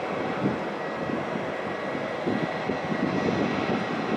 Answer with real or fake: real